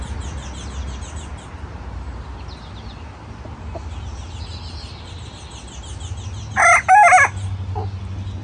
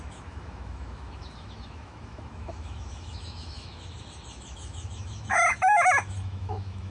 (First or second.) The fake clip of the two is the second